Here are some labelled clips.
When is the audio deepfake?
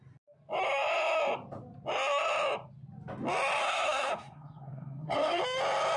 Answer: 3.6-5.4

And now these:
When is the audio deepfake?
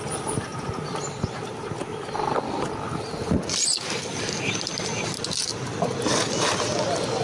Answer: none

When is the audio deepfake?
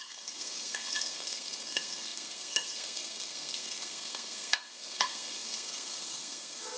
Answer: 0.0-6.8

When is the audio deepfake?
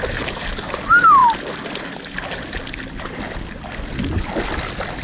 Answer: none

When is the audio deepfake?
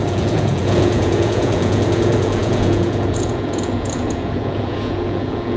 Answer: 0.0-5.6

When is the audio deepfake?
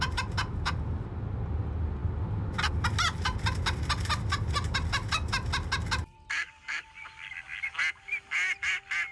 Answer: none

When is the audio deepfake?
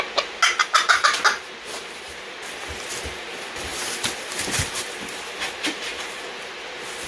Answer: 0.6-1.2; 3.7-4.9